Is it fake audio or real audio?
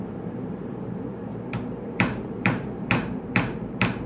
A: fake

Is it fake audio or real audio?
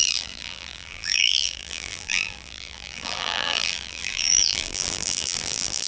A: fake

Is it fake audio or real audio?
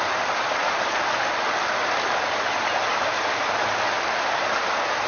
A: real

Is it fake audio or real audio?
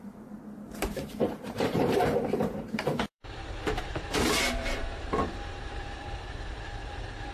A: fake